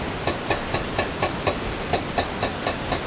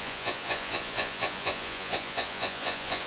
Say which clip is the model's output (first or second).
second